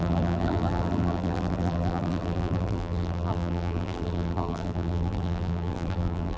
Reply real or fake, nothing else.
fake